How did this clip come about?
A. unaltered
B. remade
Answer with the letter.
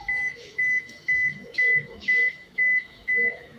B